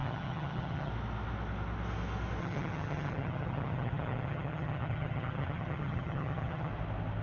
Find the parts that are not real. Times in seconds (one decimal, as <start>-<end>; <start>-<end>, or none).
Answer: 0.0-0.9; 2.4-6.7